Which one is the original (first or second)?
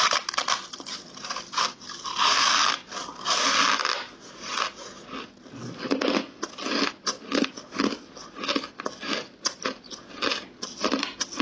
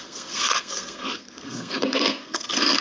first